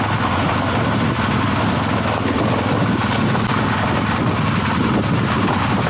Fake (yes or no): no